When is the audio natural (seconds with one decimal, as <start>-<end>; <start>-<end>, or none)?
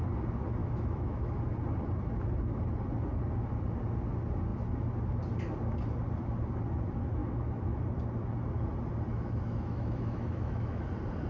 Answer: 0.0-0.6; 1.4-7.2; 7.8-9.1; 10.9-11.3